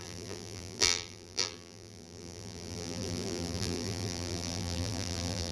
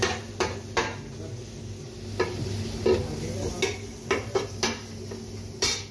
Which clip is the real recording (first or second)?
second